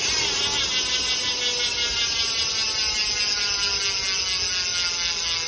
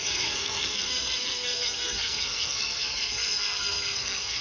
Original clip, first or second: first